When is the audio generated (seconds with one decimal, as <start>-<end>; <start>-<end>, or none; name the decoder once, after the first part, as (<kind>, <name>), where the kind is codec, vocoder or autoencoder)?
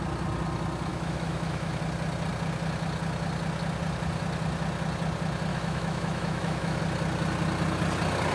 0.9-1.8 (autoencoder, DAC-VAE); 5.5-6.8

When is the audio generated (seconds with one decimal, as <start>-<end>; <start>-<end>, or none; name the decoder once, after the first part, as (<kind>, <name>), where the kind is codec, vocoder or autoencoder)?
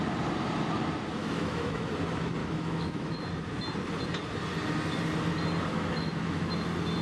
1.2-1.9 (autoencoder, DAC-VAE); 2.4-3.2; 5.7-6.5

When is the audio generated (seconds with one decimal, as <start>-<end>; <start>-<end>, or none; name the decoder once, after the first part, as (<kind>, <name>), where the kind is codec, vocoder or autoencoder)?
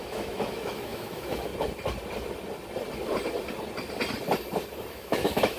0.0-1.5 (autoencoder, DAC-VAE); 4.9-5.6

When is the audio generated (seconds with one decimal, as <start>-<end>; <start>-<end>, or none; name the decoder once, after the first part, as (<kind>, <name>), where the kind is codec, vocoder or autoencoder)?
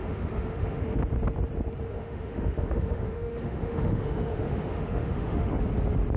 0.0-0.8 (autoencoder, DAC-VAE); 1.9-5.6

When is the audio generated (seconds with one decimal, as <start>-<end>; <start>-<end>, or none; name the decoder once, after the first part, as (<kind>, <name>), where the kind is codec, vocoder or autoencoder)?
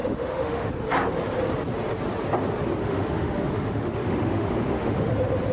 0.0-0.7 (autoencoder, DAC-VAE); 2.8-5.1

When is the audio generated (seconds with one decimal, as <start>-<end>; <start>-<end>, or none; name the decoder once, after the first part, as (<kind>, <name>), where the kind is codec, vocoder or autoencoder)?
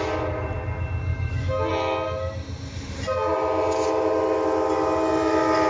1.1-1.7 (autoencoder, DAC-VAE)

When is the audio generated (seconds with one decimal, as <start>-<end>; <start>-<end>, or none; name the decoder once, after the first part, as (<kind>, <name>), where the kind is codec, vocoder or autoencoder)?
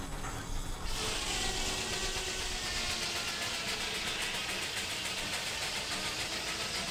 none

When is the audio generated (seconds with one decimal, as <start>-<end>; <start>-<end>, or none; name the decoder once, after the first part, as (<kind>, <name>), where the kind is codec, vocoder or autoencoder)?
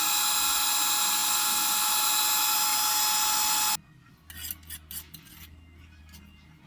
none